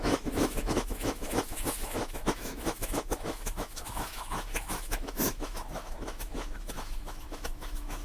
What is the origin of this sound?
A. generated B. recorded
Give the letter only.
A